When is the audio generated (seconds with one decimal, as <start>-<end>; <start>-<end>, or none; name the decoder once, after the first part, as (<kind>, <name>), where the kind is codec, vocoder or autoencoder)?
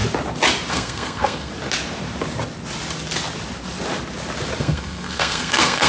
0.7-1.5 (codec, SNAC); 4.6-5.9